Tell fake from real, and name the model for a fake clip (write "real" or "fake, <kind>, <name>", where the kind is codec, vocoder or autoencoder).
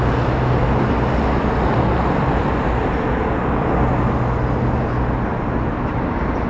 real